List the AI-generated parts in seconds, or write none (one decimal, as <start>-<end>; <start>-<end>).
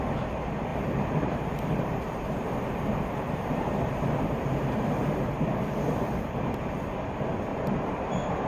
0.7-5.8; 7.5-8.5